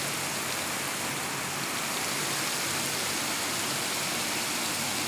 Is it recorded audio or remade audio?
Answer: recorded